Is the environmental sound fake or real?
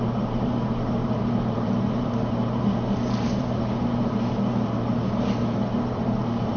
fake